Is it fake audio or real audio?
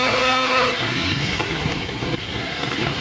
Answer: fake